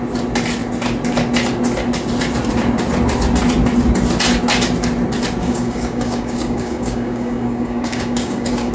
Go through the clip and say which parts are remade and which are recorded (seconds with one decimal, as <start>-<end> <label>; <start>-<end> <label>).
0.0-5.4 recorded; 5.4-8.7 remade